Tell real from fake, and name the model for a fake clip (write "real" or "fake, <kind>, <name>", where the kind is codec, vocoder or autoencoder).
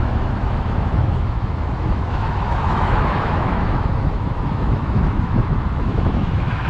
fake, autoencoder, DAC-VAE